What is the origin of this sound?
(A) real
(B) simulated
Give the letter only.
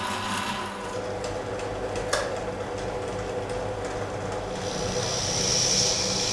A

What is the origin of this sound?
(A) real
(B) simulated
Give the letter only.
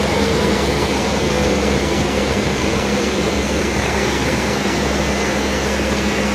B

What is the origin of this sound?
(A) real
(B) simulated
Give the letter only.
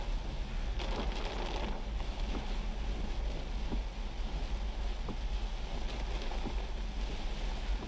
A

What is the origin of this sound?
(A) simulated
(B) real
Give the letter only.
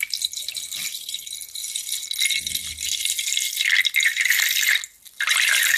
B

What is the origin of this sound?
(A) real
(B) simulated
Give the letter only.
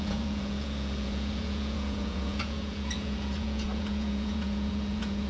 B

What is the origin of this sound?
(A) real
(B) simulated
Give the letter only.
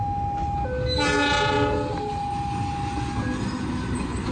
A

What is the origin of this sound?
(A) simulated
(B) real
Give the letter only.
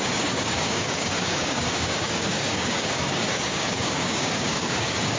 A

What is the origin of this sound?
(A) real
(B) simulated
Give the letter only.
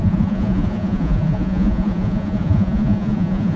B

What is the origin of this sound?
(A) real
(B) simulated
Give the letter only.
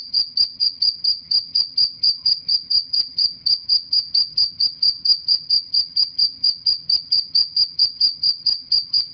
B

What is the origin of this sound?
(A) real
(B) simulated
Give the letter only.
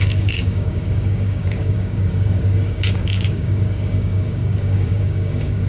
B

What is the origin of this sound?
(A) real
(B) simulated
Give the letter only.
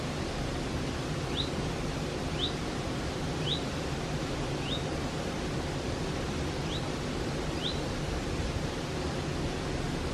A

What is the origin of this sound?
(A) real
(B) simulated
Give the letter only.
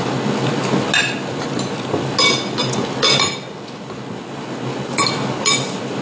A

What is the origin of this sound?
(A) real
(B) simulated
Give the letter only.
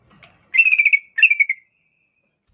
A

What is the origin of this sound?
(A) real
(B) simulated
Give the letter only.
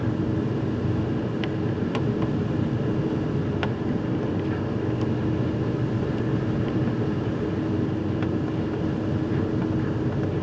A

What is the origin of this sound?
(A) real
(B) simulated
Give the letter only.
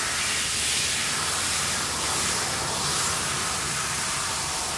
A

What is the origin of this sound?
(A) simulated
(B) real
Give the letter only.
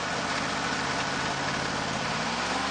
B